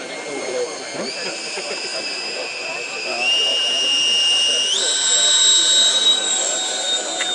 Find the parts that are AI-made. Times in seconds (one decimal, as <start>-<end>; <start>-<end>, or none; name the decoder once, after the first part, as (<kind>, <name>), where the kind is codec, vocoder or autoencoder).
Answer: none